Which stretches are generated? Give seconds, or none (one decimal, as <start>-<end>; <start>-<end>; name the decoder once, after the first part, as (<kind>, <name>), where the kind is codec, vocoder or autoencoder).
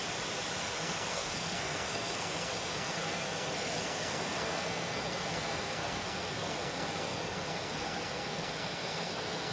0.6-9.5 (codec, SNAC)